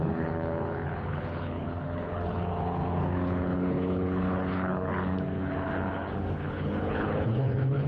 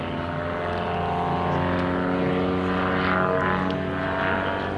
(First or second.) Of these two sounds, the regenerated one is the first